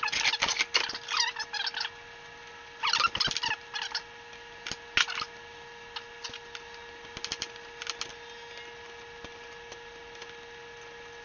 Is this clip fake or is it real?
real